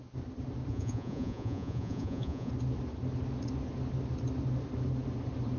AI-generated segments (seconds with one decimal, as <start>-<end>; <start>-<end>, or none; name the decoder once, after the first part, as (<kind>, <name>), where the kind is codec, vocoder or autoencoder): 0.7-2.5 (vocoder, Vocos)